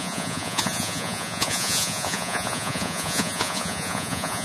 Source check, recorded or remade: remade